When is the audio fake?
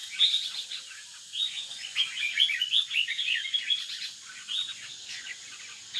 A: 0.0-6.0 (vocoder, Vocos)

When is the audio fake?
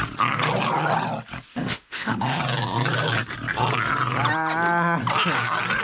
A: 1.5-2.4 (autoencoder, DAC-VAE)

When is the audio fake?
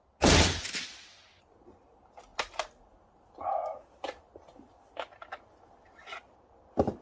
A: none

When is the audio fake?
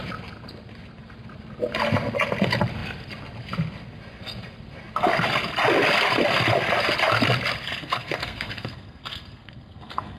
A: 7.8-10.2 (codec, SNAC)